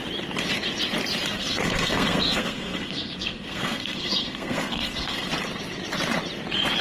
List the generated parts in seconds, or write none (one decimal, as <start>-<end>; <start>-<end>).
1.3-5.3